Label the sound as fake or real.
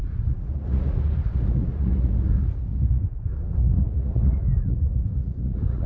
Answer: fake